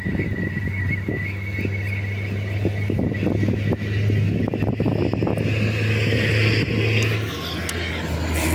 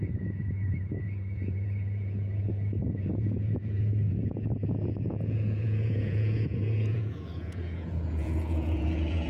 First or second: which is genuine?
first